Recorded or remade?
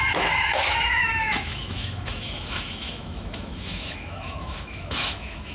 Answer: remade